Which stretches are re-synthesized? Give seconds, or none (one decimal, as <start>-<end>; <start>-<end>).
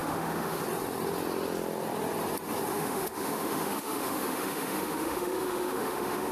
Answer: 0.0-0.6; 2.7-6.3